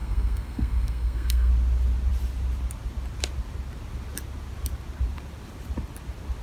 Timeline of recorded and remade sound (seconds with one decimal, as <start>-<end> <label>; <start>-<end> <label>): 0.0-1.5 remade; 1.5-6.4 recorded